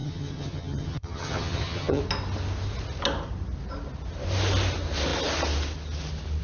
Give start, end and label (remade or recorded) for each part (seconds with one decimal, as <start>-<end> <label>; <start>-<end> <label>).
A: 0.0-2.0 remade; 2.0-6.4 recorded